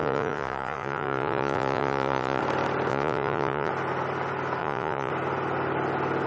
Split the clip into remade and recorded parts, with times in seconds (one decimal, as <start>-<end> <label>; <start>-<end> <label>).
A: 0.0-2.4 remade; 2.4-2.9 recorded; 2.9-3.7 remade; 3.7-4.6 recorded; 4.6-5.1 remade; 5.1-6.3 recorded